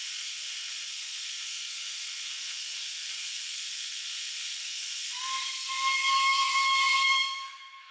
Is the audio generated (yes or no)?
yes